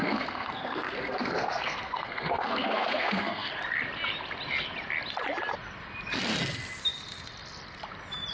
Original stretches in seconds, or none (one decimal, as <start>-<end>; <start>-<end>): 3.5-8.3